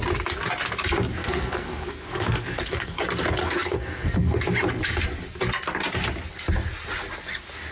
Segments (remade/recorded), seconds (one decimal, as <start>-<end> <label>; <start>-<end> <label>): 0.0-1.2 recorded; 1.2-3.0 remade; 3.0-3.4 recorded; 3.4-4.4 remade; 4.4-7.7 recorded